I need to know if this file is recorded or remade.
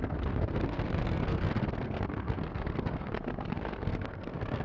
remade